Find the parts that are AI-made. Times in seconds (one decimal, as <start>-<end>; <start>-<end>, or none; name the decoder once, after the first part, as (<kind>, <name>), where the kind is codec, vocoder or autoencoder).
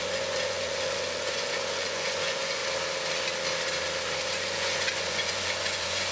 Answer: 0.0-2.6 (vocoder, Vocos); 4.3-6.1